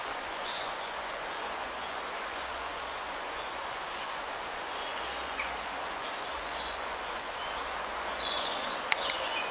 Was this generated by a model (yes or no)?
yes